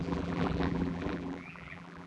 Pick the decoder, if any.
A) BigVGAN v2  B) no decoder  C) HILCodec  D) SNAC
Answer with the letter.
A